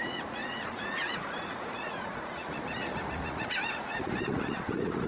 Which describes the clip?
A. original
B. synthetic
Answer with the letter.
B